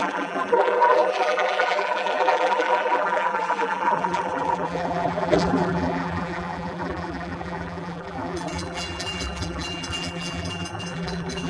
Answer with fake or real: fake